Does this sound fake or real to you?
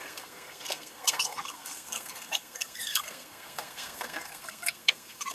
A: fake